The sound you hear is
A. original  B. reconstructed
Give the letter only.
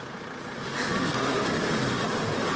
A